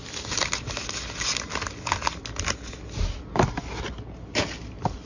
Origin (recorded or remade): recorded